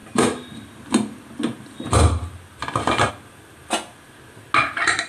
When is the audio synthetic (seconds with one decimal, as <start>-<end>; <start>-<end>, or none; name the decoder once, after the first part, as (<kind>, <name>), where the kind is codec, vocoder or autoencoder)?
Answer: none